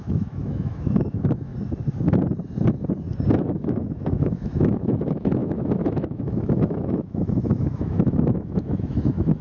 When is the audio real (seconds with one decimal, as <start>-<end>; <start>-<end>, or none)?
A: 1.5-3.5

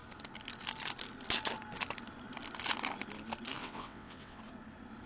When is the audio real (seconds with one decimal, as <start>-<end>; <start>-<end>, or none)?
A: 0.0-3.6; 4.4-5.1

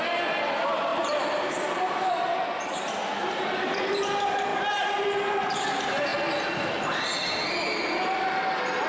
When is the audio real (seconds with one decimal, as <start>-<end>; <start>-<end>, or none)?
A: 0.0-8.9